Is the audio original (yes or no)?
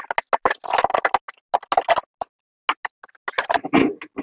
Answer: yes